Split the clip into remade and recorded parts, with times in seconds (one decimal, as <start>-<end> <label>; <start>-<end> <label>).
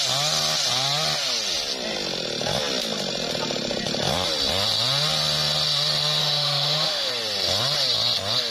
0.0-6.2 recorded; 6.2-7.1 remade; 7.1-8.5 recorded